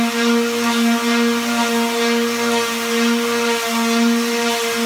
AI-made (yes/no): no